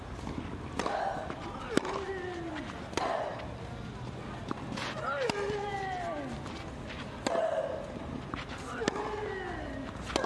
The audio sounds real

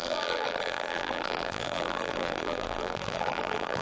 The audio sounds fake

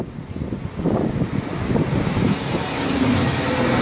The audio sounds real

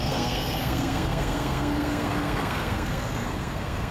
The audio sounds fake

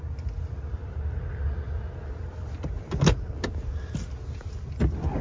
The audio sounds real